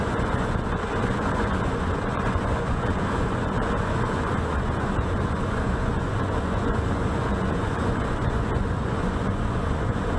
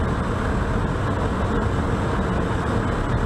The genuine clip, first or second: second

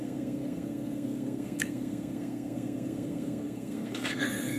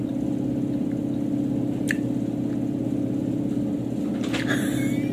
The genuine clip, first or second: second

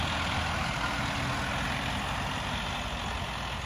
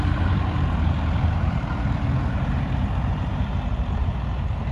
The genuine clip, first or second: first